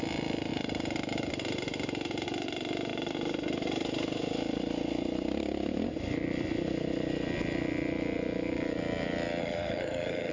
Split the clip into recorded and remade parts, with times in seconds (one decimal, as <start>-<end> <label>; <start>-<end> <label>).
0.0-9.4 recorded; 9.4-10.3 remade